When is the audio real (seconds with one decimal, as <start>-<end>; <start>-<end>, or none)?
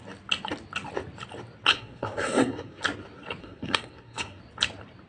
0.0-1.7; 2.8-3.4; 4.4-5.1